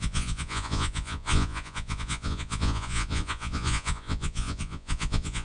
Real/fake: fake